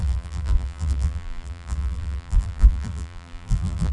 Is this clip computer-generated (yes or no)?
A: yes